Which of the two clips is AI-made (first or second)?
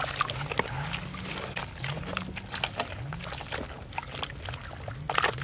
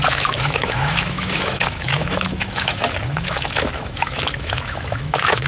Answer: second